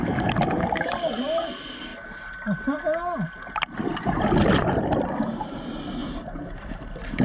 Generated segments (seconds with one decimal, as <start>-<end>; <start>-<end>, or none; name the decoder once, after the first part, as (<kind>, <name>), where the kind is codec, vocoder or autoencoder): none